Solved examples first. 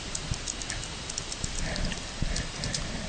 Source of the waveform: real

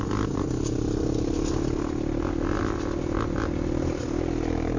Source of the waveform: real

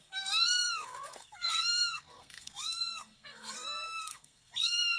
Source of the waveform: fake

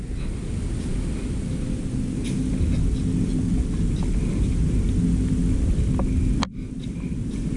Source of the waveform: real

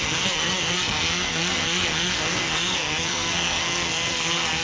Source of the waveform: fake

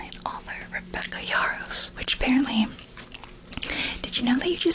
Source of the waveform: real